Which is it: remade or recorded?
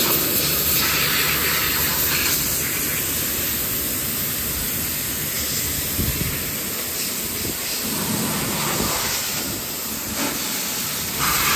recorded